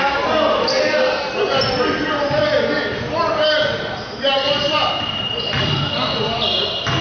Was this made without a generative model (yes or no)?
yes